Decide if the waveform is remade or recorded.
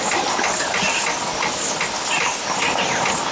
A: recorded